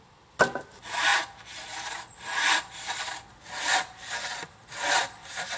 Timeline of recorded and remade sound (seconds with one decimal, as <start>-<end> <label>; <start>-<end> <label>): 0.0-5.6 recorded